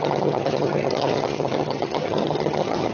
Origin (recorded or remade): remade